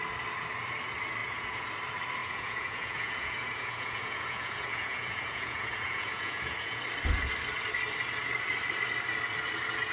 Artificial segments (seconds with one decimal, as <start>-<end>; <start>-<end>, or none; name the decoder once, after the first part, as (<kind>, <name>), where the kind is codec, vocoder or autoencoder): 1.2-1.7 (vocoder, Vocos); 2.2-6.8